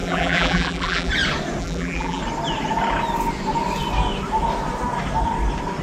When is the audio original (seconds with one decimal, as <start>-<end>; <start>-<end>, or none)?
1.1-1.6; 2.2-5.8